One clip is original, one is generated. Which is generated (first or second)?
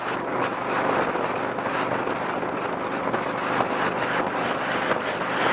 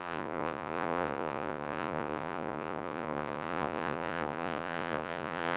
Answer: second